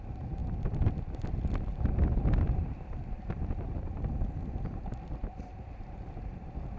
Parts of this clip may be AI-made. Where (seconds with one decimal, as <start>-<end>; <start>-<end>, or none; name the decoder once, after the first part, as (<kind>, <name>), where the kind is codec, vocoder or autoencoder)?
none